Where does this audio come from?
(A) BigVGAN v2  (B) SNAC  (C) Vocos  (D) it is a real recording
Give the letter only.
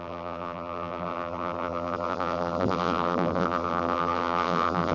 A